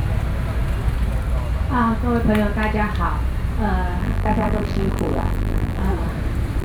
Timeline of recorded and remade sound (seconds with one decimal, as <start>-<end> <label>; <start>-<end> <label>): 0.0-4.0 recorded; 4.0-5.8 remade; 5.8-6.6 recorded